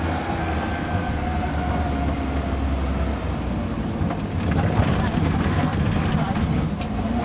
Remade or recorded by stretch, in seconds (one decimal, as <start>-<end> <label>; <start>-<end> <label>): 0.0-1.5 remade; 1.5-5.6 recorded; 5.6-6.0 remade; 6.0-7.2 recorded